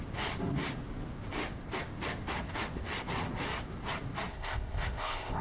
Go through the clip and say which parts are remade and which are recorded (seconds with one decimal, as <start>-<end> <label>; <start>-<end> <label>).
0.0-4.3 recorded; 4.3-5.4 remade